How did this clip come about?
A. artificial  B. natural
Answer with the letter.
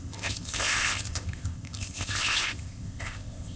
A